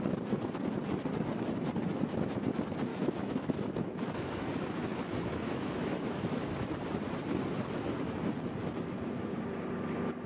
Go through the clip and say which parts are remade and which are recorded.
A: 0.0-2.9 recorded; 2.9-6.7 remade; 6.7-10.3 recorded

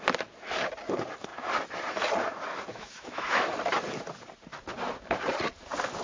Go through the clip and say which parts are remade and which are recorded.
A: 0.0-2.7 recorded; 2.7-3.5 remade; 3.5-6.0 recorded

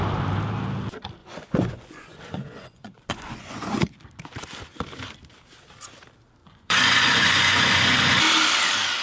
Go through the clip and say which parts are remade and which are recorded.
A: 0.0-1.2 recorded; 1.2-4.0 remade; 4.0-6.4 recorded; 6.4-8.2 remade; 8.2-9.0 recorded

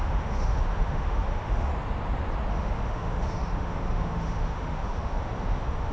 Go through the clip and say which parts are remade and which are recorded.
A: 0.0-1.7 remade; 1.7-2.5 recorded; 2.5-5.9 remade

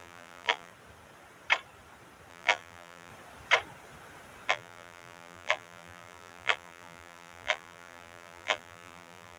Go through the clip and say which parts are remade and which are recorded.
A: 0.0-0.7 remade; 0.7-2.3 recorded; 2.3-3.1 remade; 3.1-4.5 recorded; 4.5-9.4 remade